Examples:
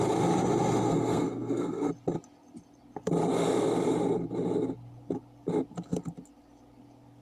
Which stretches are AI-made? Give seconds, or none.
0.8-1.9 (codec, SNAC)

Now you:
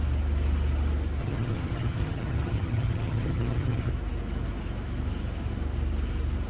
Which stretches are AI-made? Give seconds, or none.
1.2-3.9 (vocoder, HiFi-GAN)

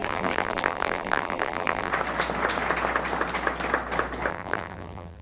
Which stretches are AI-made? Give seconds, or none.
0.0-1.9 (vocoder, BigVGAN v2); 4.3-5.2

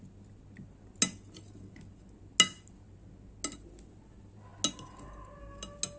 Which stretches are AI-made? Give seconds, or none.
none

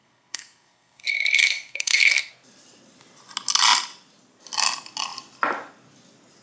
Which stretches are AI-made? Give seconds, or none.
0.0-2.3 (codec, SNAC)

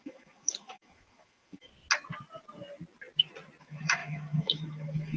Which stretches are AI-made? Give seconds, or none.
0.0-1.7 (autoencoder, DAC-VAE); 3.6-5.2

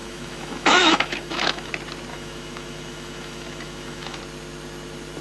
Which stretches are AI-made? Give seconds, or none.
0.0-1.7 (autoencoder, DAC-VAE); 2.1-4.2